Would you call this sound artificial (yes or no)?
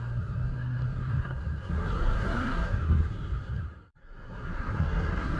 yes